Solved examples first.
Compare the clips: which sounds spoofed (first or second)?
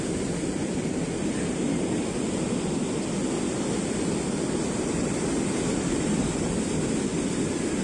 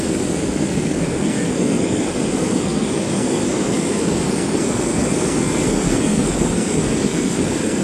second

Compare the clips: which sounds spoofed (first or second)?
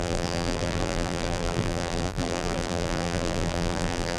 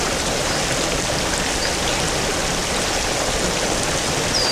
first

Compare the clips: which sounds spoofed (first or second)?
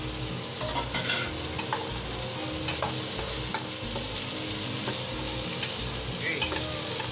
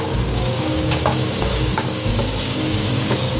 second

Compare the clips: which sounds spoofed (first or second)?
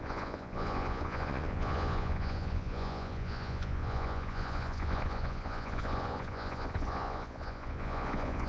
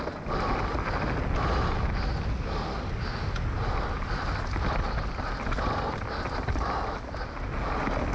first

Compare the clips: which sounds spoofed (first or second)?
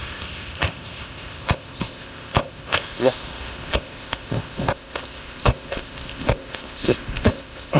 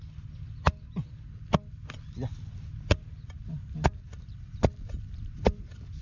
first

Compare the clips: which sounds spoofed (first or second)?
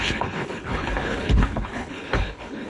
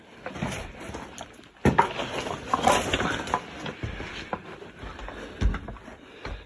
first